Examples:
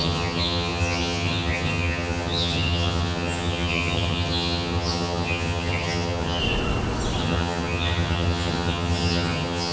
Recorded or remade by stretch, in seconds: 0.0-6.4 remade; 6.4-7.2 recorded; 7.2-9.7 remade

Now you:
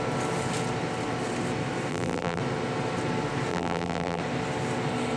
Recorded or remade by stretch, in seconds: 0.0-1.9 recorded; 1.9-2.4 remade; 2.4-3.5 recorded; 3.5-4.2 remade; 4.2-5.2 recorded

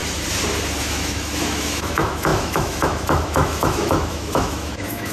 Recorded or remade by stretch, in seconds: 0.0-0.8 recorded; 0.8-5.1 remade

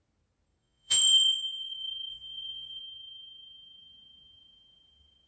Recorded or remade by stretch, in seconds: 0.0-0.6 recorded; 0.6-1.7 remade; 1.7-2.1 recorded; 2.1-2.8 remade; 2.8-5.3 recorded

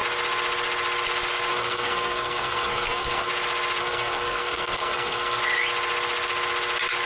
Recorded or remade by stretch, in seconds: 0.0-1.5 recorded; 1.5-3.3 remade; 3.3-3.8 recorded; 3.8-5.4 remade; 5.4-7.1 recorded

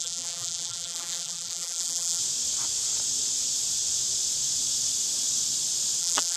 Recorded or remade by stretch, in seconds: 0.0-2.2 remade; 2.2-6.0 recorded; 6.0-6.4 remade